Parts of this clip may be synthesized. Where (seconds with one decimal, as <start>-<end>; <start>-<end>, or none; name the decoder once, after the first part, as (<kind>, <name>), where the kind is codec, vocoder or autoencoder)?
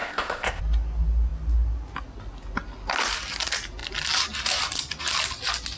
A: 0.0-0.6 (codec, ZipCodec)